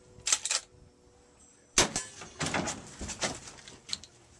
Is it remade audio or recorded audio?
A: recorded